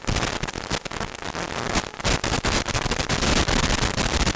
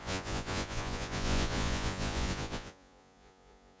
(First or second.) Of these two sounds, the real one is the first